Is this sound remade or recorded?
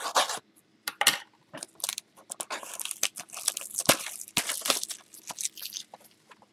recorded